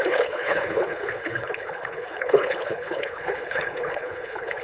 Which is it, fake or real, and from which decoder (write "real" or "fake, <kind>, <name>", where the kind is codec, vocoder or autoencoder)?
fake, codec, HILCodec